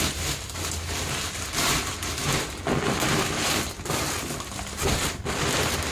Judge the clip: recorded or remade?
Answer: recorded